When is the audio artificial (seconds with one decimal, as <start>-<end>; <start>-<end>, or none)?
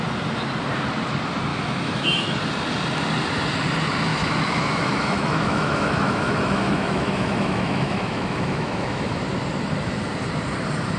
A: 1.5-2.4; 4.1-9.2